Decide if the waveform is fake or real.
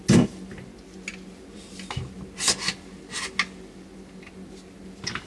real